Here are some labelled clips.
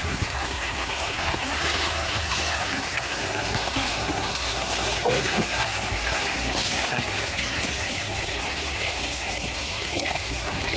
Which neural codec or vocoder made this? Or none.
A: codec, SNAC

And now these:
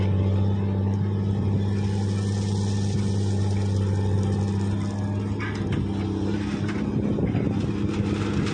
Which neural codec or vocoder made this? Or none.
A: none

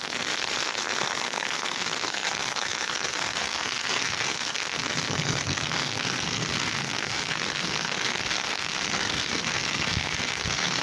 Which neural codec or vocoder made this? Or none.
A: codec, SNAC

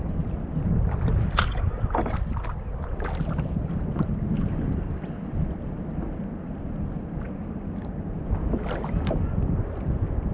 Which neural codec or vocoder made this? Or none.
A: none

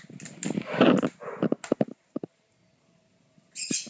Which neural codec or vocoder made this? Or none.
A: none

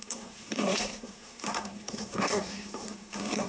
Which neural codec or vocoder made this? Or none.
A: codec, SNAC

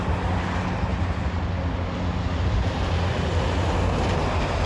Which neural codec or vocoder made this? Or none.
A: none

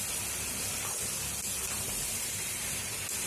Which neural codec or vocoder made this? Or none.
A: none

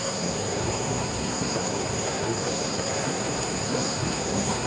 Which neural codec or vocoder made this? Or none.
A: codec, SNAC